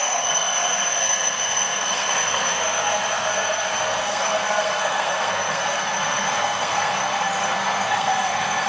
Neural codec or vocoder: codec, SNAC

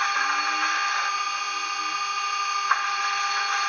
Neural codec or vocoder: none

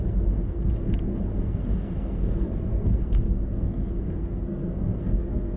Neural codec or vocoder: codec, SNAC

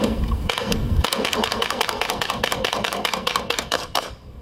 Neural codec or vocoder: codec, SNAC